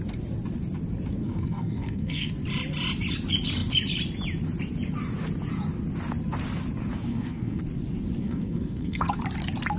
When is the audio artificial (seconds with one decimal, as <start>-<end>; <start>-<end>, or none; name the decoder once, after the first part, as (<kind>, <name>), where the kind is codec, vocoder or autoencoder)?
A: 1.2-2.3 (codec, SNAC); 7.1-7.6; 8.2-9.2